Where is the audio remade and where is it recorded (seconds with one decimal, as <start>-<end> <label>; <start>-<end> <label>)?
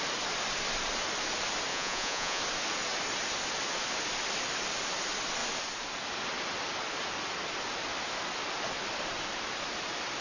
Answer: 0.0-1.7 recorded; 1.7-2.4 remade; 2.4-10.2 recorded